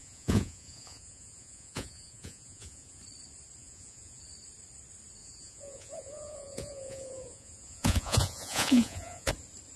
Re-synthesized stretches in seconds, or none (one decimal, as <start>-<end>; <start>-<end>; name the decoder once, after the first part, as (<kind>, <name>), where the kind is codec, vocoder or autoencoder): 0.0-3.0 (vocoder, Vocos); 3.6-4.2; 5.2-9.3